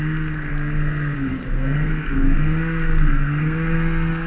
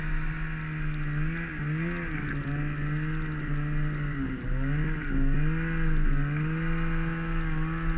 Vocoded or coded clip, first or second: first